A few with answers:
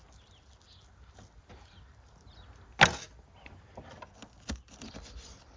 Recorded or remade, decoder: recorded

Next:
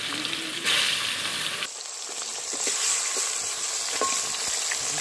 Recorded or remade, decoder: recorded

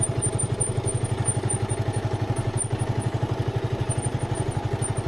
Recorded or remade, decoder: recorded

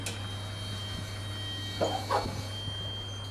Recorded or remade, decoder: recorded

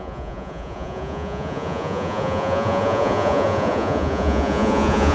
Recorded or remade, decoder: remade, vocoder, Vocos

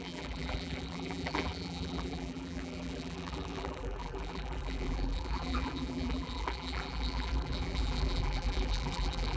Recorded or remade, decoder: remade, vocoder, BigVGAN v2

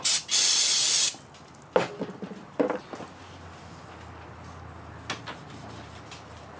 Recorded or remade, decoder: recorded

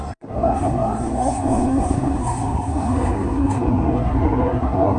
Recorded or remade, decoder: remade, codec, SNAC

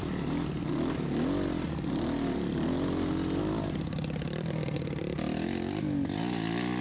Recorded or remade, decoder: recorded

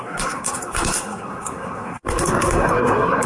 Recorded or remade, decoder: remade, codec, SNAC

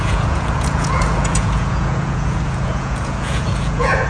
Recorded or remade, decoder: remade, vocoder, Vocos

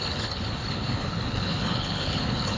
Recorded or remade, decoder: remade, codec, HILCodec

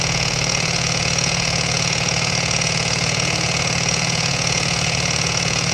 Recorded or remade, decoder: remade, vocoder, Vocos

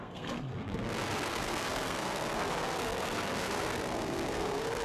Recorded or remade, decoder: remade, codec, SNAC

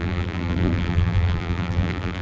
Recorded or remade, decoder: remade, vocoder, BigVGAN v2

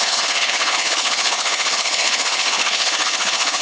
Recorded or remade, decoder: remade, codec, HILCodec